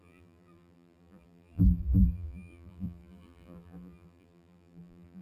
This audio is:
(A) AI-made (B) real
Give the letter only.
A